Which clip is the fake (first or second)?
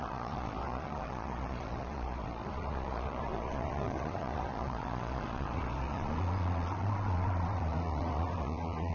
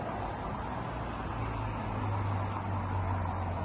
first